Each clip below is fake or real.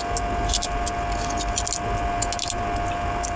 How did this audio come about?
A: real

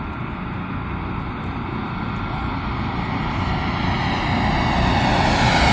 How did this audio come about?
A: real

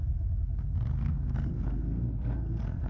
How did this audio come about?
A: fake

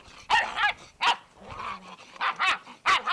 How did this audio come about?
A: real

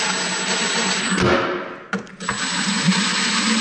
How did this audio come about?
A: real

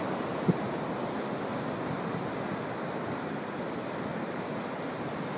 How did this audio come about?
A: real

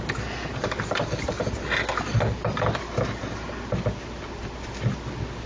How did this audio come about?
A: real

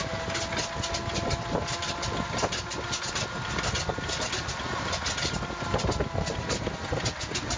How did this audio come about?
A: real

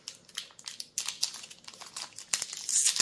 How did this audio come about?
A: real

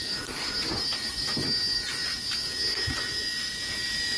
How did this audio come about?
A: fake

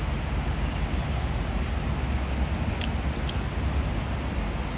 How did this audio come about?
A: real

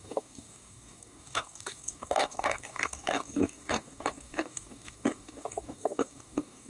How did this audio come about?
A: fake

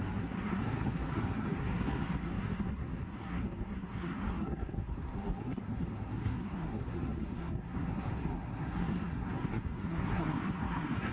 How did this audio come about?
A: fake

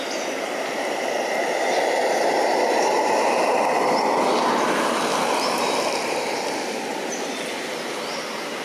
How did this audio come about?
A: real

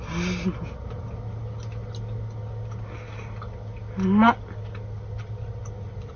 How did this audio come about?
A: real